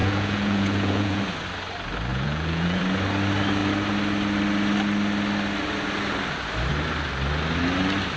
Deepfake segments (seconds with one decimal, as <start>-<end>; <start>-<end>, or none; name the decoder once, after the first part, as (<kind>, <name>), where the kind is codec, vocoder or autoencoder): 0.0-1.2 (vocoder, Vocos); 2.1-2.8